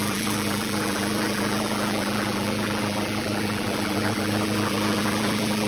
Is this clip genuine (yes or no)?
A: no